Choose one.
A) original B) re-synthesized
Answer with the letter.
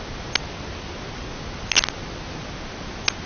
A